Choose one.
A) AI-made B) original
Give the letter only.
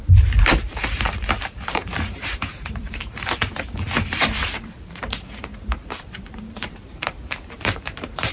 A